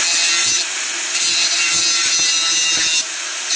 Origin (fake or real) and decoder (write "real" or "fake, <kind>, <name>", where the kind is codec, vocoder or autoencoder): real